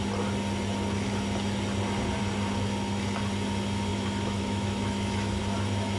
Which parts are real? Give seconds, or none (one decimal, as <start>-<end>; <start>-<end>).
0.0-3.9; 5.4-6.0